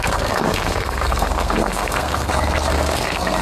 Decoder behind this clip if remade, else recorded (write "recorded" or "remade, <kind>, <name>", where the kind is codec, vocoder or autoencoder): remade, codec, SNAC